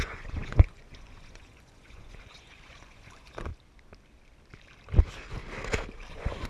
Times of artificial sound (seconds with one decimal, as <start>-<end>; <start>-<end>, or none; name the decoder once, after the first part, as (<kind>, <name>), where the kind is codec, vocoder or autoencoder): 0.0-3.5 (vocoder, Vocos); 6.1-6.5